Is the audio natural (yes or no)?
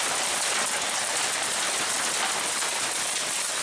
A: yes